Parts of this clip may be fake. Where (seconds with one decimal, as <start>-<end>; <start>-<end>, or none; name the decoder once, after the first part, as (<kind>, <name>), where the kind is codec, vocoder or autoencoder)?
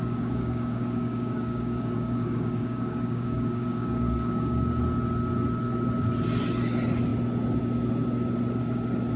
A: 0.0-4.8 (codec, DAC)